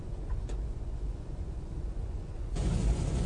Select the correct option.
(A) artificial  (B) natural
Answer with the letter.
A